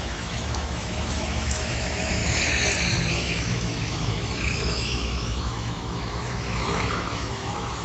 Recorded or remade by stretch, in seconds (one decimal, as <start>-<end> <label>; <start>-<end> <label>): 0.0-2.2 remade; 2.2-3.1 recorded; 3.1-7.8 remade